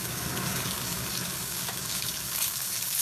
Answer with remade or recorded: remade